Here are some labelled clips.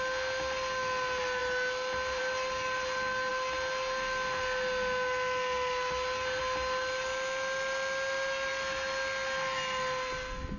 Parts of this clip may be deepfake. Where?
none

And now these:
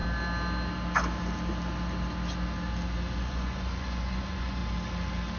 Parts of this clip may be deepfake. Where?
3.2-4.6 (vocoder, Vocos)

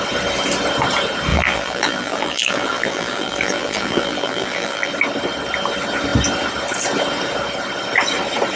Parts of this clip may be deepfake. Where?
1.3-4.9 (vocoder, BigVGAN v2)

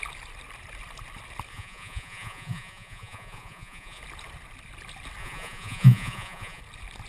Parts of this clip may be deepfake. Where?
1.5-4.0 (vocoder, Vocos); 5.2-6.6

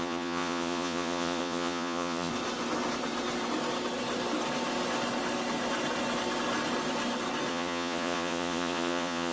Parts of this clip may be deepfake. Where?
0.0-2.3 (vocoder, Vocos); 7.5-9.3

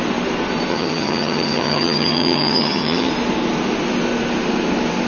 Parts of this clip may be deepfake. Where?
0.7-3.1 (vocoder, HiFi-GAN)

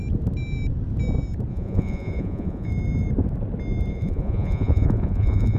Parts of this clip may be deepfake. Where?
1.5-2.7 (vocoder, Vocos); 3.9-5.6